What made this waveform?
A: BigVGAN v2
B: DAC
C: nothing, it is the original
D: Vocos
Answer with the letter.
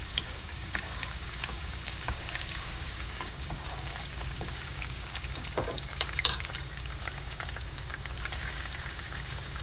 B